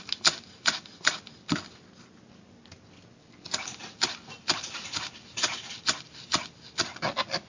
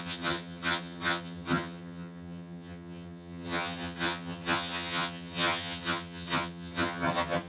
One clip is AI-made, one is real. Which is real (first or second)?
first